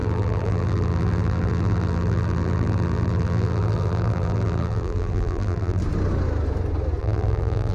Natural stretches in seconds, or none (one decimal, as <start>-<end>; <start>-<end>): 5.8-7.0